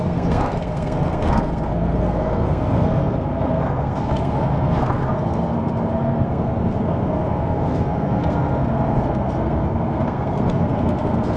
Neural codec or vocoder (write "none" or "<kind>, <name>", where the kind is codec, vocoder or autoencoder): codec, SNAC